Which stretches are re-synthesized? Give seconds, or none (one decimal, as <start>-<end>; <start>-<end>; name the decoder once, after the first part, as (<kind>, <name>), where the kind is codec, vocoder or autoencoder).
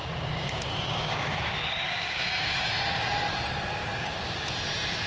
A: 0.0-2.7 (codec, DAC); 3.8-4.5